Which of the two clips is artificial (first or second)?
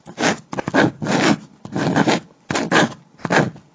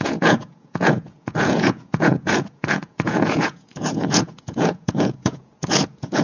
second